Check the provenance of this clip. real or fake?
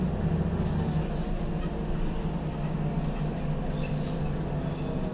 real